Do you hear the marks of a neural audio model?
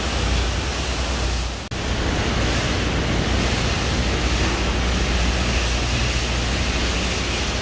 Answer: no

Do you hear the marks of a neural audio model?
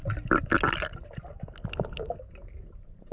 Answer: no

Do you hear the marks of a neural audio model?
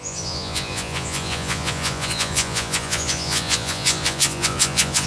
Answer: yes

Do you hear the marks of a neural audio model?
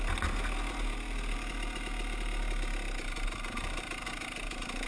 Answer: no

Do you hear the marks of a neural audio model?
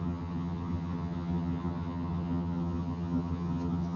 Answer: yes